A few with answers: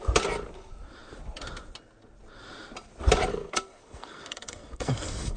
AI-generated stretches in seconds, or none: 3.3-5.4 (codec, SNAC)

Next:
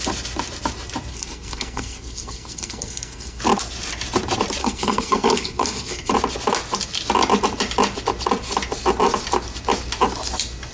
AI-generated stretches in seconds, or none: 1.1-3.4 (codec, SNAC); 4.6-6.1

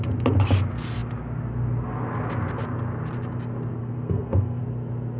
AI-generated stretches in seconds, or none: 3.8-4.6 (codec, SNAC)

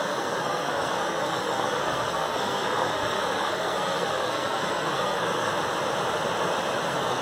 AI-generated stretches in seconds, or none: 0.0-5.5 (codec, SNAC); 6.8-7.2

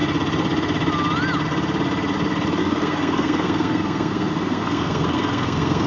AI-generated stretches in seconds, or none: 2.6-5.9 (codec, SNAC)

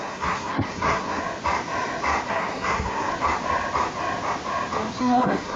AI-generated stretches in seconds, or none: 0.0-1.2 (codec, SNAC); 2.3-3.1; 5.0-5.6

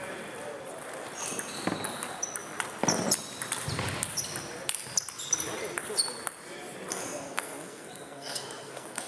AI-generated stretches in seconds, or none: 6.9-9.1 (codec, SNAC)